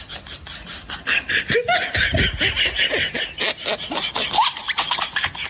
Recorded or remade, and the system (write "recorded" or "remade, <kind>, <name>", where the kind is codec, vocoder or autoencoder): recorded